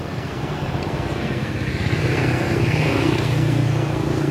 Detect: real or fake fake